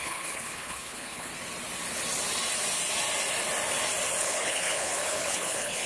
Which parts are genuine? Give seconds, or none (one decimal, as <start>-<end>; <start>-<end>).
1.3-4.2